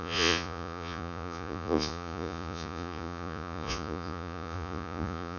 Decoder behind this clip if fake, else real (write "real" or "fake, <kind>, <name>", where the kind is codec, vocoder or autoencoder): fake, vocoder, Vocos